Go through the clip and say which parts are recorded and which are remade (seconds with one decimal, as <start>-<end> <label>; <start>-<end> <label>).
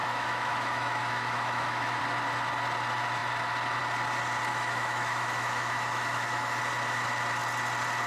0.0-2.0 remade; 2.0-4.5 recorded; 4.5-6.6 remade; 6.6-8.1 recorded